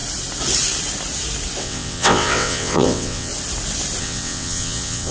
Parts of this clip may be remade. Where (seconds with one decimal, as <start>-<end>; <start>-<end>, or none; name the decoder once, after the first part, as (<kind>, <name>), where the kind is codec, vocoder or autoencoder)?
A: 1.6-3.3 (vocoder, WaveNeXt); 4.0-5.1